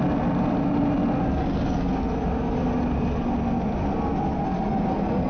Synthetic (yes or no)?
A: no